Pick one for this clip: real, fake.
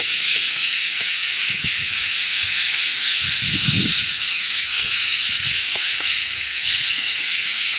fake